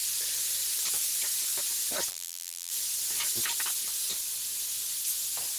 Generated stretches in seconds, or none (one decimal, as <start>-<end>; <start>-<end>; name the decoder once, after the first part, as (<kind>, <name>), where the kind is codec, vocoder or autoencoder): 2.1-2.7 (vocoder, BigVGAN v2)